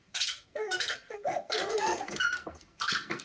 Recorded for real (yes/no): no